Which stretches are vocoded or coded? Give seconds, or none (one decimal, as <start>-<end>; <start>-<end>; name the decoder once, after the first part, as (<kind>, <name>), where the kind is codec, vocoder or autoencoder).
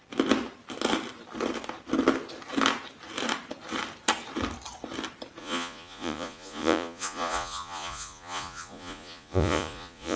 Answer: 5.4-10.2 (vocoder, Vocos)